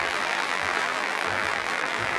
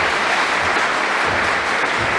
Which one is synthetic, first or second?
first